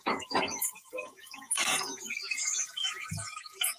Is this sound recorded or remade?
remade